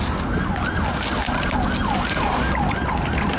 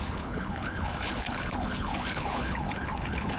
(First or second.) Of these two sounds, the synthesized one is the second